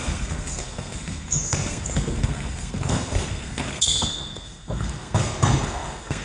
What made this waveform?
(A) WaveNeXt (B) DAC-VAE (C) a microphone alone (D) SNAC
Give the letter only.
D